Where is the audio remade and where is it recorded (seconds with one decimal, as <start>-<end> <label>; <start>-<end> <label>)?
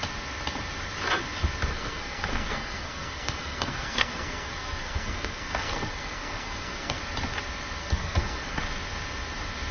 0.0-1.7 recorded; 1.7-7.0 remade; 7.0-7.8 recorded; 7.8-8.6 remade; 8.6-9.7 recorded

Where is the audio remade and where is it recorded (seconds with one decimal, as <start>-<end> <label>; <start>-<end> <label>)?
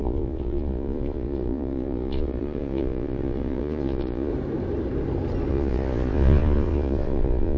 0.0-4.3 remade; 4.3-5.5 recorded; 5.5-7.6 remade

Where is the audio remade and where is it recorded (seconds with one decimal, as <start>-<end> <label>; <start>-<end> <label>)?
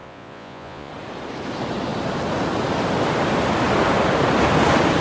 0.0-0.9 remade; 0.9-5.0 recorded